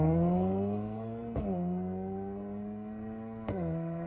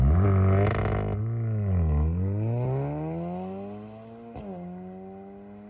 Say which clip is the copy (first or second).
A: first